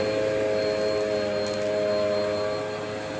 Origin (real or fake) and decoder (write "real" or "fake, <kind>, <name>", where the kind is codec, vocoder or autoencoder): real